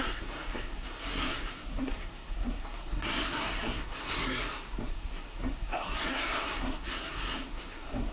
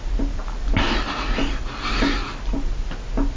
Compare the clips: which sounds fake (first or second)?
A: first